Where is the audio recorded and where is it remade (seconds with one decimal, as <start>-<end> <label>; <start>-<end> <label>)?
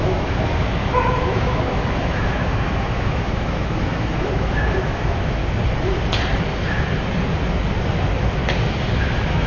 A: 0.0-5.4 remade; 5.4-8.9 recorded; 8.9-9.5 remade